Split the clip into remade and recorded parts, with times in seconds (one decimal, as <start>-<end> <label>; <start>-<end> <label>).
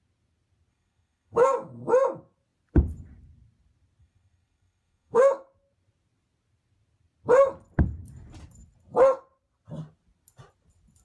0.0-0.7 recorded; 0.7-1.7 remade; 1.7-4.0 recorded; 4.0-5.3 remade; 5.3-11.0 recorded